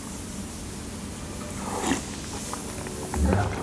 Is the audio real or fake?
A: real